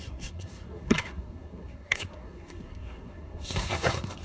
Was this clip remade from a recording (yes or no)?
yes